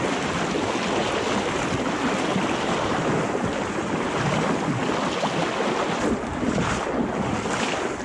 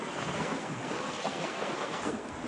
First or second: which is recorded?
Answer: first